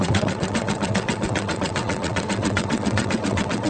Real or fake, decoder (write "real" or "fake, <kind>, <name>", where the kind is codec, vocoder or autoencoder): fake, vocoder, WaveNeXt